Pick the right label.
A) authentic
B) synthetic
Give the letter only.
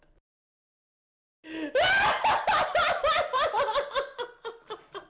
A